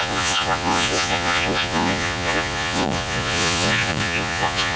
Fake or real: fake